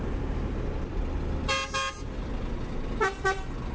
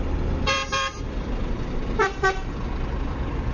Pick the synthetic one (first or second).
second